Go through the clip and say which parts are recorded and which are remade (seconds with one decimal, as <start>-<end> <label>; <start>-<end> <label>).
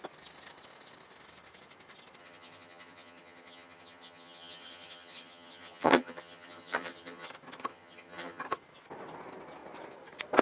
0.0-2.2 recorded; 2.2-7.3 remade; 7.3-7.7 recorded; 7.7-8.4 remade; 8.4-10.4 recorded